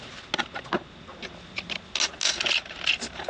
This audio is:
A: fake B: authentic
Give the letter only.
B